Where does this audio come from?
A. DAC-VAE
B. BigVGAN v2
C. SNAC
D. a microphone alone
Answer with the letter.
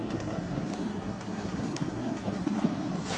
C